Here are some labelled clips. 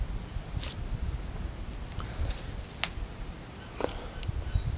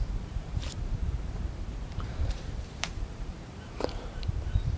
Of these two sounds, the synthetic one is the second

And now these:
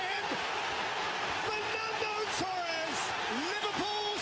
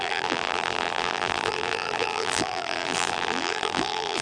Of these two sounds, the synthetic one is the second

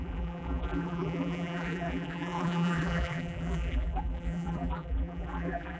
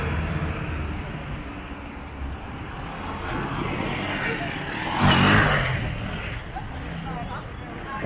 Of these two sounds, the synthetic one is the first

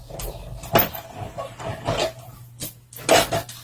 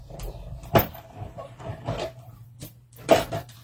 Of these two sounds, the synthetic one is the second